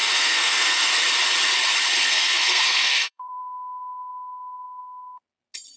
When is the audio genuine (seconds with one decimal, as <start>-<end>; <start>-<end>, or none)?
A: 0.9-2.0; 3.4-5.8